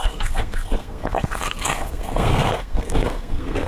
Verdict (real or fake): fake